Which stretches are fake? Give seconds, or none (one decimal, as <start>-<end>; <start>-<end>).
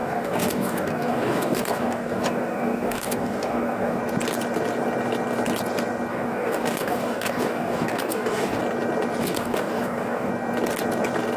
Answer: 0.0-4.0; 6.1-8.6; 9.2-10.3